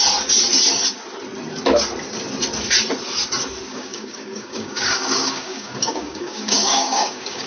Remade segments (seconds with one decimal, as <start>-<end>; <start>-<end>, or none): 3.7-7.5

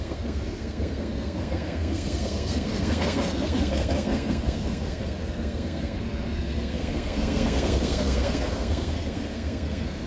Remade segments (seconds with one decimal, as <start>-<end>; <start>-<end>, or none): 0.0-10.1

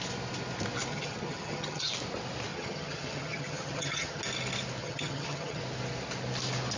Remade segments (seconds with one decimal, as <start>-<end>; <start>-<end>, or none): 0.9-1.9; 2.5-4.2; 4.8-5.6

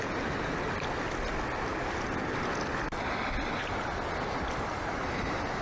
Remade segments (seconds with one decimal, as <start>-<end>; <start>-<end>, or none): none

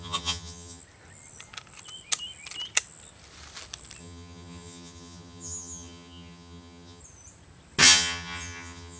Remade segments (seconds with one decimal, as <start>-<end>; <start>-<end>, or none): 0.0-0.8; 4.0-7.0; 7.8-9.0

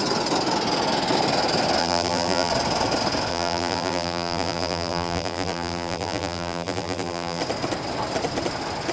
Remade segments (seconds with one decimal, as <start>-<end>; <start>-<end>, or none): 1.8-2.5; 3.3-7.4

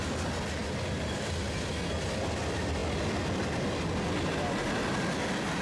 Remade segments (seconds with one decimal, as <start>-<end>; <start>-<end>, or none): none